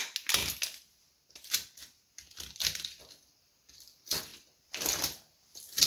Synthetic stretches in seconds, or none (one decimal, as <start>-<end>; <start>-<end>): none